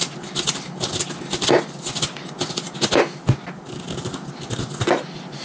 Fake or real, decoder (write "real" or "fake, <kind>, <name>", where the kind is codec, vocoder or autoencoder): real